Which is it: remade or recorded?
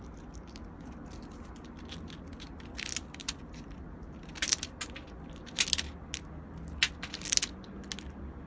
recorded